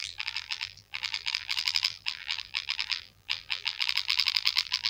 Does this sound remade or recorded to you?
remade